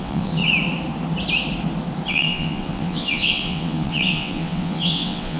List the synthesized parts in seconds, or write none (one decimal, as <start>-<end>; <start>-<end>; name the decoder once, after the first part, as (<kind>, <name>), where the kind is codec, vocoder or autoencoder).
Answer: 0.0-0.4 (vocoder, WaveNeXt); 2.1-5.4